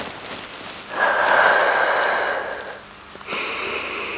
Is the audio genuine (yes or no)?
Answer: yes